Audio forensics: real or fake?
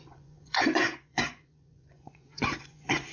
fake